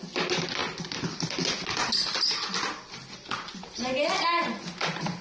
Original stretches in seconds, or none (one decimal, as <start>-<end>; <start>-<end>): 0.0-5.2

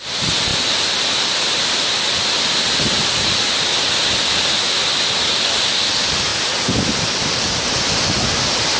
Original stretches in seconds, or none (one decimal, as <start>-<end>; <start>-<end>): 0.0-8.8

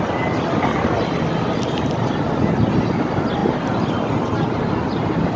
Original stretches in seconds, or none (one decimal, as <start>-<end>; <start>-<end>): 0.0-5.4

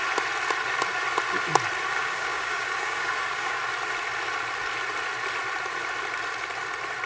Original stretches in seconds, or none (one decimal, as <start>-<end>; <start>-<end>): 0.0-2.0; 3.6-7.1